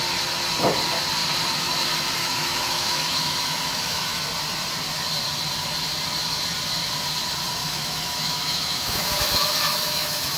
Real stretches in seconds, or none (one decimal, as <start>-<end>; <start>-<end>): 0.0-2.2; 4.2-7.6